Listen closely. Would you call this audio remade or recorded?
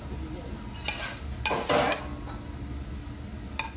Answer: recorded